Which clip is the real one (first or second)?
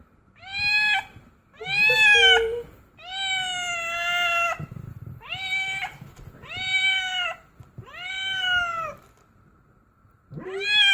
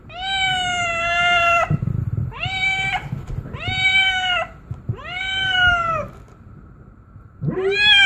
first